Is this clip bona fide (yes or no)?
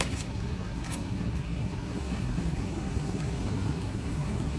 no